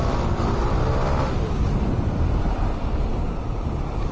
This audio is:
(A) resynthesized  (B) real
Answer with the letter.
A